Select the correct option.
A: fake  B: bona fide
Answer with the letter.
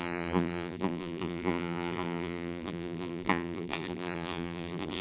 A